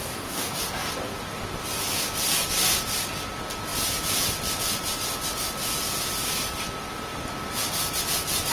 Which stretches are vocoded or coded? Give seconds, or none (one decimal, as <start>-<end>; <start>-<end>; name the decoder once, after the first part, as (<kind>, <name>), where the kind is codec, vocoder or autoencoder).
0.0-0.6 (codec, DAC)